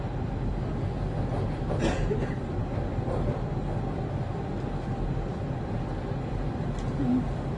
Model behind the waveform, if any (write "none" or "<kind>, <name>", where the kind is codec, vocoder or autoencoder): none